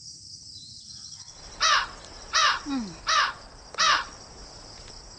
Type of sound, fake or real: real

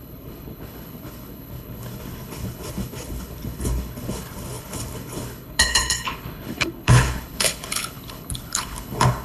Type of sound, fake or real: fake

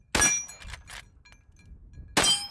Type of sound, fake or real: real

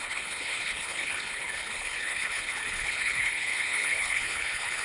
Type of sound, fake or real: fake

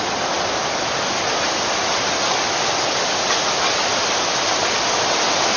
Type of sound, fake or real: real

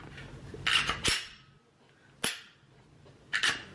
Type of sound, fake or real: real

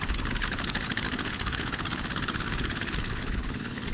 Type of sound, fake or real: fake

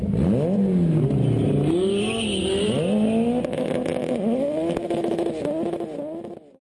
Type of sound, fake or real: real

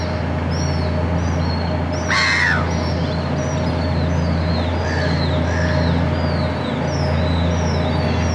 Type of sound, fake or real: real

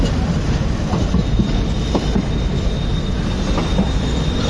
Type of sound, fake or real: real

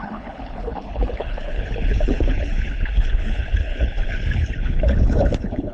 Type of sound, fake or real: fake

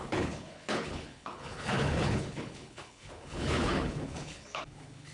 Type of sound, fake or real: fake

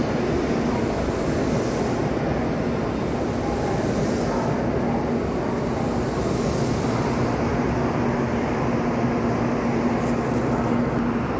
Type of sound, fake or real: real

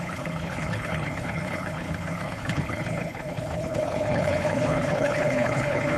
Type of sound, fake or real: fake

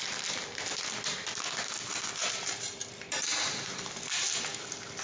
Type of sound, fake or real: real